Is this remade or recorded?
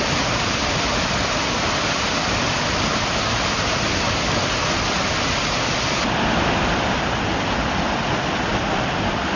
remade